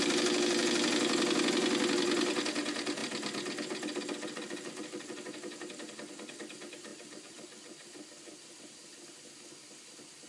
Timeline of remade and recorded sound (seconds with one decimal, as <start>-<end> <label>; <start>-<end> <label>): 0.0-10.3 recorded